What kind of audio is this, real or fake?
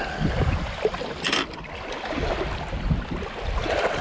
real